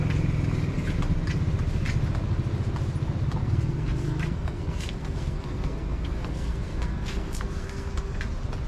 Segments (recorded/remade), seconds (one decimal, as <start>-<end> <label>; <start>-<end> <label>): 0.0-3.4 recorded; 3.4-8.2 remade; 8.2-8.7 recorded